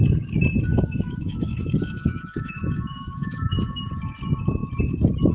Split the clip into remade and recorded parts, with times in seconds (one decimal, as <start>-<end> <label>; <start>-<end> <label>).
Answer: 0.0-0.7 recorded; 0.7-3.9 remade; 3.9-5.3 recorded